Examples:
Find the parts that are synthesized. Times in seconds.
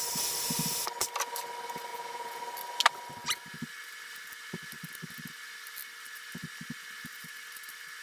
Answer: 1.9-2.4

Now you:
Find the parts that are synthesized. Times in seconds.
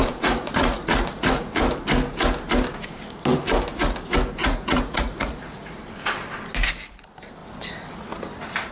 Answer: 0.0-1.5; 4.4-5.8